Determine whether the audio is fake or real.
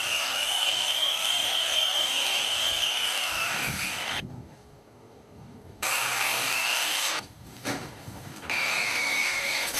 fake